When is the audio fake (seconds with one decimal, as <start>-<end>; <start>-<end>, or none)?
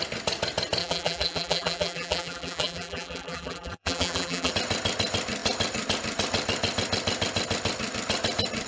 0.8-4.5